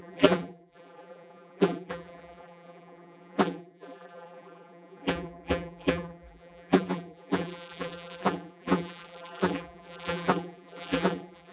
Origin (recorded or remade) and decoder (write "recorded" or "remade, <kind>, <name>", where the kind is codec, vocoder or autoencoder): remade, vocoder, BigVGAN v2